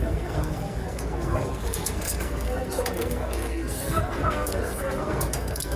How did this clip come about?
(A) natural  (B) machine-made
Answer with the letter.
B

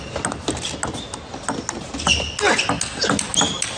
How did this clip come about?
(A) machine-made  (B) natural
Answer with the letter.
B